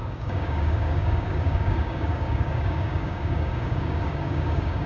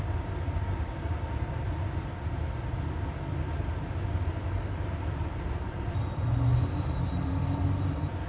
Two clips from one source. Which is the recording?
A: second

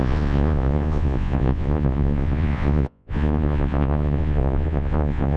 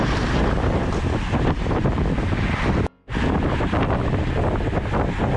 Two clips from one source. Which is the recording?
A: second